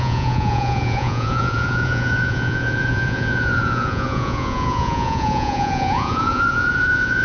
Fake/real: fake